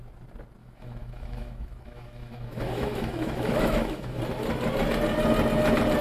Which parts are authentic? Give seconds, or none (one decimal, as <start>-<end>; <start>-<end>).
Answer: 0.0-0.6; 4.2-6.0